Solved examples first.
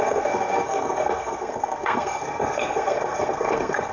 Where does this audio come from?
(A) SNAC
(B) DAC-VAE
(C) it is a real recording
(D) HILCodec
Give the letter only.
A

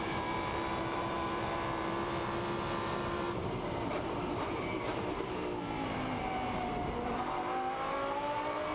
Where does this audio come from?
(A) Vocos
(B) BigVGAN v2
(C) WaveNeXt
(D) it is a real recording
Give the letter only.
B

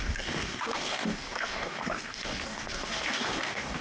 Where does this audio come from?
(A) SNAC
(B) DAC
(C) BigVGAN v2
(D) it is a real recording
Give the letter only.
B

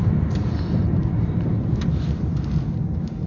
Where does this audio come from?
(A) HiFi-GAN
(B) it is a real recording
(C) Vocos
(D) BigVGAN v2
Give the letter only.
D